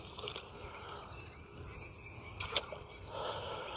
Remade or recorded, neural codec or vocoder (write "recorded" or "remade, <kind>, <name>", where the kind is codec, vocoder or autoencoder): remade, vocoder, BigVGAN v2